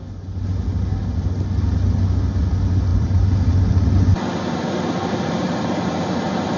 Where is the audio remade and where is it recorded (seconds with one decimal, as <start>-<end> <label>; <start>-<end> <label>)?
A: 0.0-2.9 recorded; 2.9-3.7 remade; 3.7-5.0 recorded; 5.0-6.0 remade; 6.0-6.6 recorded